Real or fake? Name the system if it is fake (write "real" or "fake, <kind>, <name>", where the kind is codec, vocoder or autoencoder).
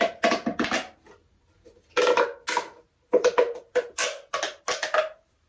real